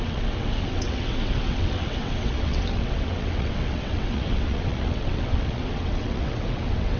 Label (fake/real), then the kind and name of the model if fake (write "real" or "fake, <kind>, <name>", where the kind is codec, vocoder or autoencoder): fake, vocoder, WaveNeXt